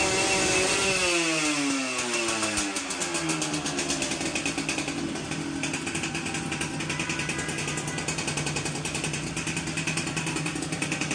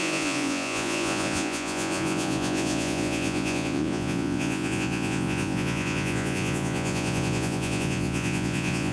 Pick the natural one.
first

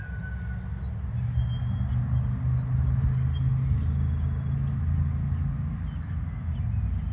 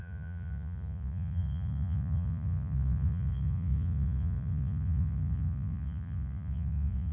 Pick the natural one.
first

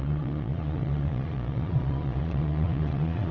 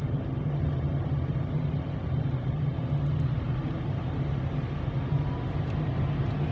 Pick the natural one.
second